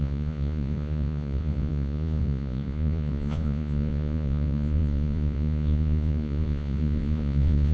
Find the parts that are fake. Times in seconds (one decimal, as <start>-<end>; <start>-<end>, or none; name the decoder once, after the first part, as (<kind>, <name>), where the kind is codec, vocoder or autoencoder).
0.0-7.7 (vocoder, Vocos)